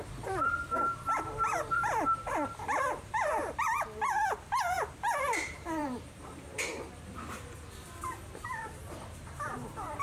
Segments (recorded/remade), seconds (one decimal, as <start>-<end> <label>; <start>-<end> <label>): 0.0-6.7 remade; 6.7-8.2 recorded; 8.2-10.0 remade